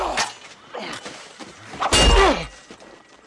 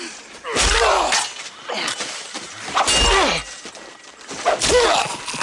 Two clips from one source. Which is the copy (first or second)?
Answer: second